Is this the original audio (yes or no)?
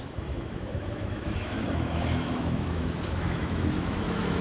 no